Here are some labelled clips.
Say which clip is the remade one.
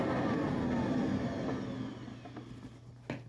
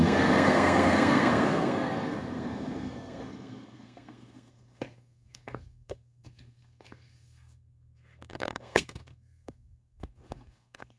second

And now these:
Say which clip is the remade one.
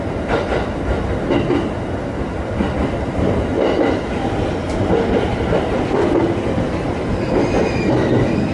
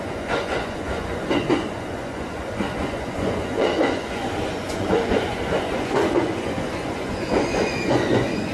second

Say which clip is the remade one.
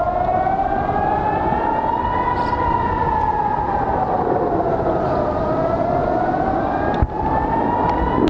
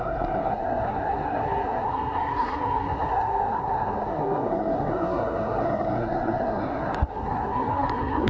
second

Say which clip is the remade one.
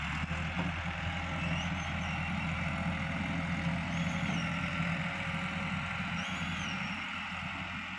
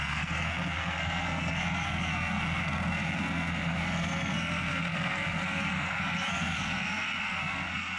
second